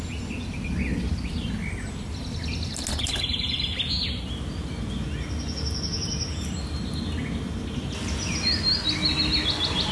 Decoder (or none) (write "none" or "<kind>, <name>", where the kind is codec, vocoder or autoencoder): none